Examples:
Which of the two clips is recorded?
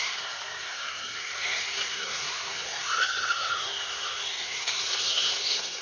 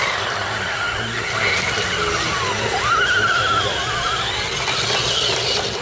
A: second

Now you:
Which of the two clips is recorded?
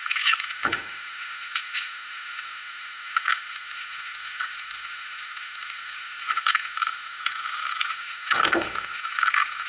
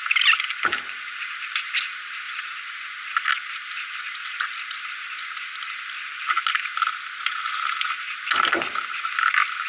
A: second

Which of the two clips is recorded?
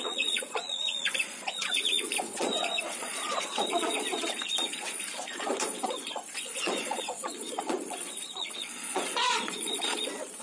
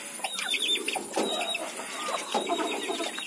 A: second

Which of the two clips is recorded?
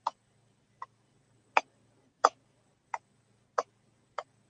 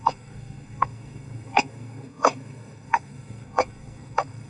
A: first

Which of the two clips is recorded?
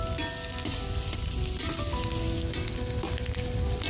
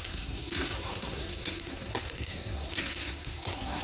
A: first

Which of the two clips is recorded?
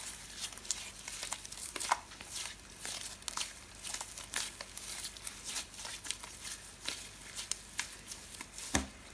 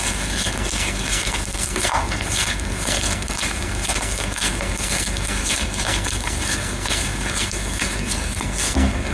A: first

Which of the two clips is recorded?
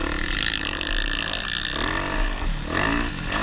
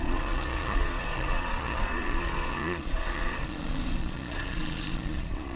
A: first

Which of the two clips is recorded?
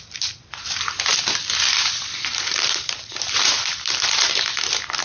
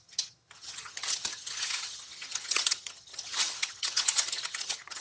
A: first